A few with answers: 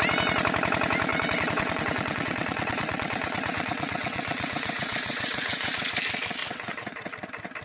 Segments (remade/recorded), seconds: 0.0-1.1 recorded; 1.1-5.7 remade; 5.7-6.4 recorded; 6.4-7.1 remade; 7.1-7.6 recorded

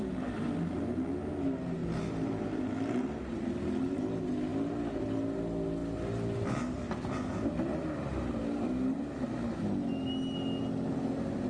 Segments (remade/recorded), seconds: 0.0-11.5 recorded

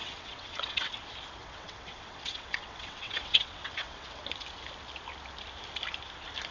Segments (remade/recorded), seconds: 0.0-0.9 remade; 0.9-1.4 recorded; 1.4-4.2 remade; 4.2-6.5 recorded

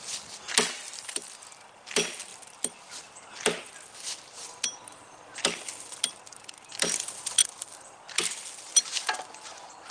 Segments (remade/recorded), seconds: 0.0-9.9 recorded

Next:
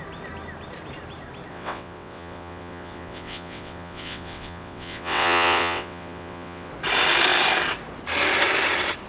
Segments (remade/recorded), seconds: 0.0-1.5 recorded; 1.5-6.7 remade; 6.7-9.1 recorded

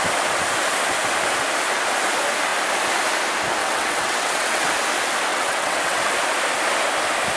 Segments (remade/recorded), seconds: 0.0-3.6 recorded; 3.6-4.7 remade; 4.7-5.3 recorded; 5.3-6.0 remade; 6.0-7.4 recorded

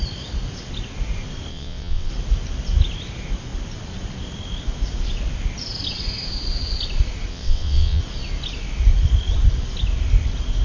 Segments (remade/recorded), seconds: 0.0-1.5 recorded; 1.5-2.1 remade; 2.1-7.3 recorded; 7.3-8.0 remade; 8.0-10.6 recorded